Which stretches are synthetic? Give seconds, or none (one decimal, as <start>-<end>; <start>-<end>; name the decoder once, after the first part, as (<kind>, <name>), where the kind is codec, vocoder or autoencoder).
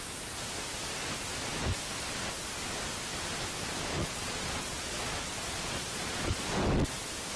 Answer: 4.0-6.3 (vocoder, Vocos)